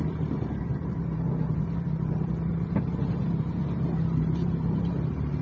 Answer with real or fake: fake